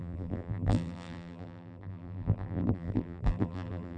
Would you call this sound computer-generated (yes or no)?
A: yes